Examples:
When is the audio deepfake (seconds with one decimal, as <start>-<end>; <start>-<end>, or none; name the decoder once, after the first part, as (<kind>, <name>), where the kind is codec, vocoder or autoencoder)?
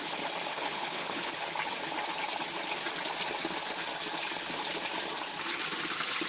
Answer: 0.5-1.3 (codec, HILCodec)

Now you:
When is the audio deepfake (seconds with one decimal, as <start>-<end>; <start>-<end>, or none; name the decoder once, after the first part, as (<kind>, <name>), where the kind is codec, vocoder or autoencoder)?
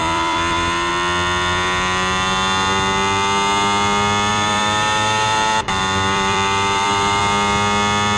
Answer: 0.0-0.9 (vocoder, BigVGAN v2); 4.3-7.2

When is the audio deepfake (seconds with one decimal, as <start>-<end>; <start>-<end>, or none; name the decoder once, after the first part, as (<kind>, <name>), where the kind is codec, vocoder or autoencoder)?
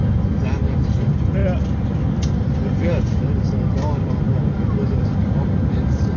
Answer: 0.0-1.4 (vocoder, BigVGAN v2); 3.7-6.2